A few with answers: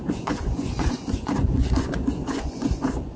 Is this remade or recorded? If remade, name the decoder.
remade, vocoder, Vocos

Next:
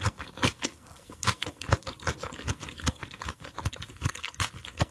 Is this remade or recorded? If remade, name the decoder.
remade, codec, SNAC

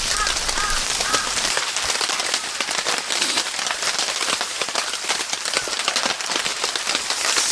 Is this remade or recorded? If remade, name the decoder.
recorded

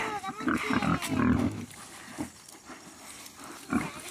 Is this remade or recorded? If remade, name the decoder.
recorded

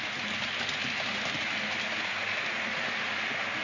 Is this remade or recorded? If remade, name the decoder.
recorded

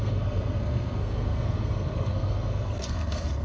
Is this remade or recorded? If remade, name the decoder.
remade, codec, SNAC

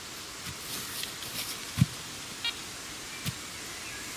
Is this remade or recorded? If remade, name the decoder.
recorded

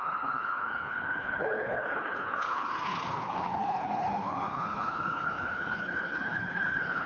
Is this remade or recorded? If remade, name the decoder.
remade, codec, HILCodec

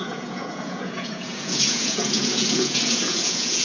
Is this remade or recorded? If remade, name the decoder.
remade, vocoder, Vocos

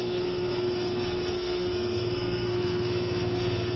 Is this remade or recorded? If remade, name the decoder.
remade, codec, SNAC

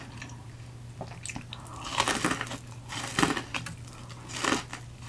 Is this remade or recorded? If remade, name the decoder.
recorded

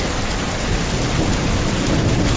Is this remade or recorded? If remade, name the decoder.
recorded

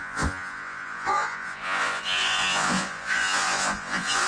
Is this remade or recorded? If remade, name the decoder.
remade, vocoder, Vocos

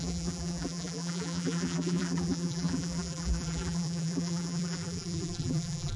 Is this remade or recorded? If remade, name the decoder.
remade, vocoder, BigVGAN v2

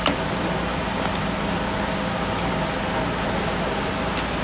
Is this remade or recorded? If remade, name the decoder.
recorded